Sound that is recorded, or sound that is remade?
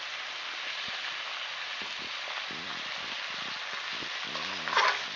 recorded